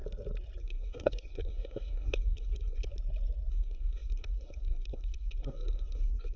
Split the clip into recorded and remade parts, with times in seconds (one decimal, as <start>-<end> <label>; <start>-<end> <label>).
0.0-0.6 recorded; 0.6-2.9 remade; 2.9-3.5 recorded; 3.5-6.4 remade